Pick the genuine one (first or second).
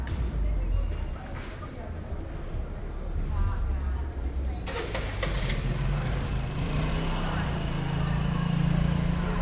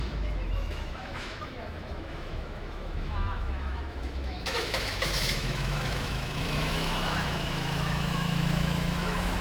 first